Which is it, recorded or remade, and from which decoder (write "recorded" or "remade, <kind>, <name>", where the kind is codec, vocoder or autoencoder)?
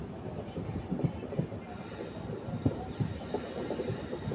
recorded